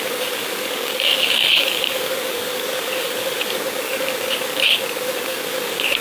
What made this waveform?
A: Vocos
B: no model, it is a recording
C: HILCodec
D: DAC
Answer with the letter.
D